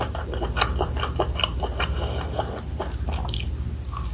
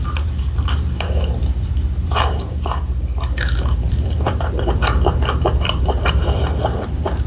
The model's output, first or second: second